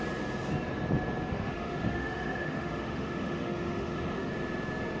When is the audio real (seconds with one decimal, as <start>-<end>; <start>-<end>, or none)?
0.0-1.3; 4.3-5.0